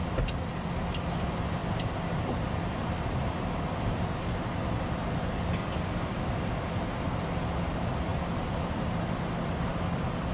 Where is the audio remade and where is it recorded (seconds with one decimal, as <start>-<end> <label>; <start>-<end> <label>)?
0.0-1.6 recorded; 1.6-3.0 remade; 3.0-5.6 recorded; 5.6-6.3 remade; 6.3-8.1 recorded; 8.1-8.9 remade; 8.9-10.3 recorded